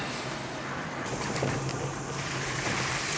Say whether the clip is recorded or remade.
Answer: recorded